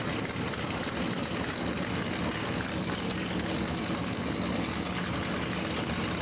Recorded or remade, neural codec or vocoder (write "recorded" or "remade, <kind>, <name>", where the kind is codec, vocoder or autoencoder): recorded